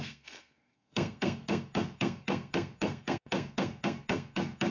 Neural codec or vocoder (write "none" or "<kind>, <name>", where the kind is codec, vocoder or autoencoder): codec, SNAC